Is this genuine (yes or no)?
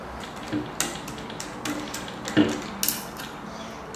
yes